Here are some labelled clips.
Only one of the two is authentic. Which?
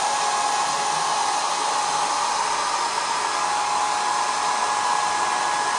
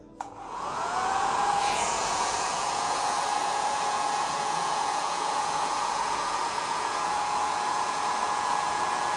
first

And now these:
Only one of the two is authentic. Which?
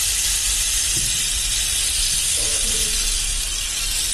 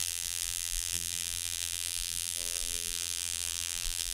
first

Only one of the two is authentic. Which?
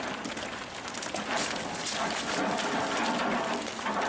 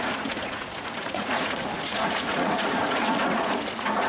first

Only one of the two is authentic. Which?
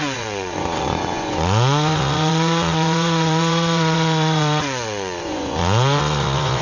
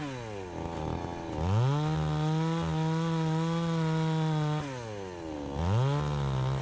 second